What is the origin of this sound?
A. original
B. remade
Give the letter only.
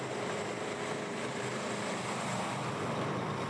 A